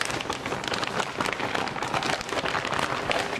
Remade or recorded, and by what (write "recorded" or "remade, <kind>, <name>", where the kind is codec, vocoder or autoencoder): recorded